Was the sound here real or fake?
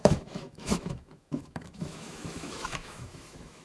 fake